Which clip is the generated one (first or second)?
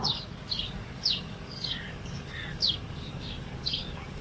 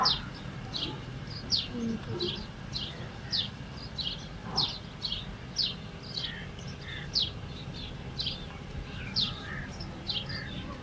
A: first